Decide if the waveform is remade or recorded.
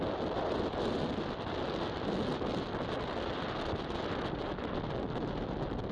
recorded